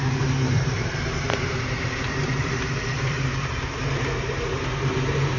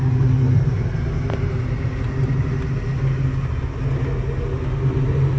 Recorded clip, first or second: second